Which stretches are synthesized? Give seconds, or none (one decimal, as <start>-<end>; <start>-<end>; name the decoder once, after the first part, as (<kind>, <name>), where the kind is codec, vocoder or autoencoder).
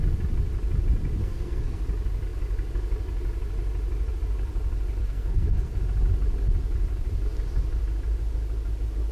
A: 1.2-1.8 (codec, SNAC); 5.0-5.8